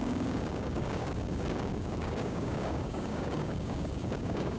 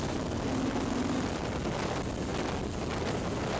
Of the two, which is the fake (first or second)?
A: first